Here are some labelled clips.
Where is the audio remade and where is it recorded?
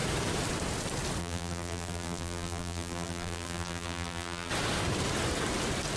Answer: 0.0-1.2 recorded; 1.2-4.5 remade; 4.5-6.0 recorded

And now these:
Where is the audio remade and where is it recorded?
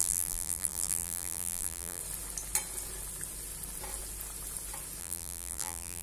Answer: 0.0-2.0 remade; 2.0-5.0 recorded; 5.0-6.0 remade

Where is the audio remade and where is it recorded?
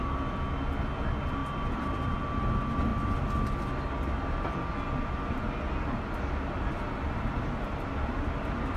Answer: 0.0-1.4 recorded; 1.4-2.2 remade; 2.2-8.8 recorded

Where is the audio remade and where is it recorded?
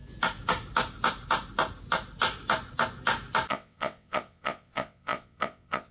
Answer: 0.0-3.5 recorded; 3.5-5.9 remade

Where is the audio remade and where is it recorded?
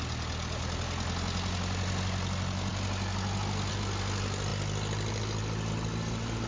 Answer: 0.0-6.5 recorded